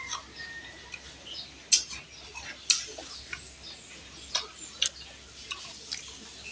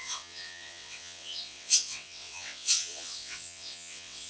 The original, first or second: first